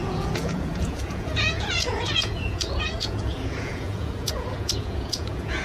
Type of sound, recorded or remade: remade